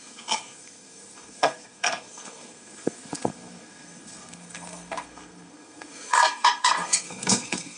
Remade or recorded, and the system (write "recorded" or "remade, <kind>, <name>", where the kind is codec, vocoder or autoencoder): remade, codec, SNAC